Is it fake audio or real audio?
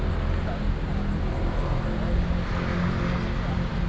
real